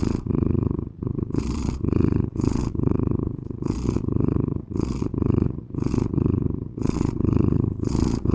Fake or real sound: fake